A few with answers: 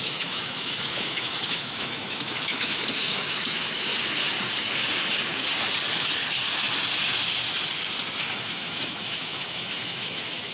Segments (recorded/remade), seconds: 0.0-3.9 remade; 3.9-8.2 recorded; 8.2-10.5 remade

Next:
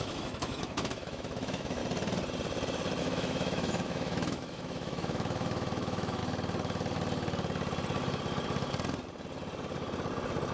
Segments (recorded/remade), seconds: 0.0-1.8 remade; 1.8-3.0 recorded; 3.0-6.2 remade; 6.2-10.5 recorded